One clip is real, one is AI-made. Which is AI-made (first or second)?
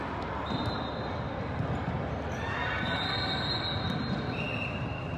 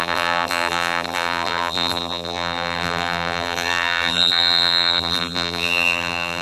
second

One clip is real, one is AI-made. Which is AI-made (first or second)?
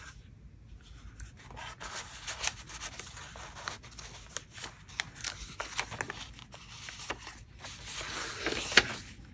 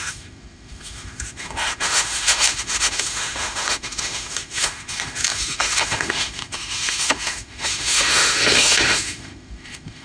second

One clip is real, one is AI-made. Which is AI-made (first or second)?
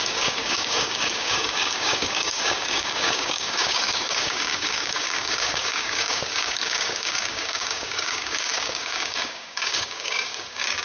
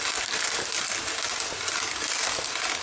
first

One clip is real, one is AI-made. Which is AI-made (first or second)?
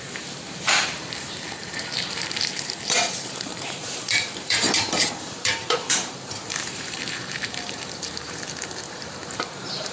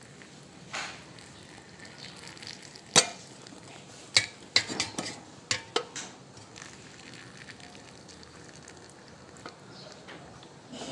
first